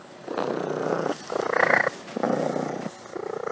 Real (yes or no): yes